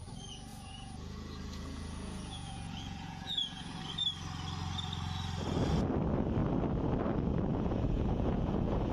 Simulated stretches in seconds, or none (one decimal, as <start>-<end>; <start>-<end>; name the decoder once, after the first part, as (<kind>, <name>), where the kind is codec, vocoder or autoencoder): 0.5-3.8 (vocoder, Vocos); 7.5-8.9